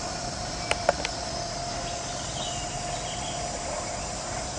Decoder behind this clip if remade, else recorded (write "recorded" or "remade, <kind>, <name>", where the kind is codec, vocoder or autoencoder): recorded